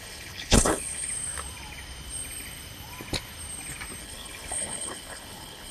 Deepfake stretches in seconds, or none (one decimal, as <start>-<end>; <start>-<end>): 0.0-1.1; 4.0-5.7